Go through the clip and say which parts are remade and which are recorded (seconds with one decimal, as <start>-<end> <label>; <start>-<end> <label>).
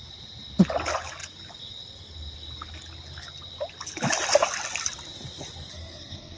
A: 0.0-5.7 recorded; 5.7-6.4 remade